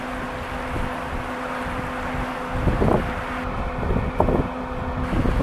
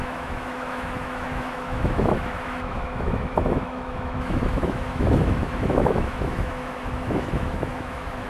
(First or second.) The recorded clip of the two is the first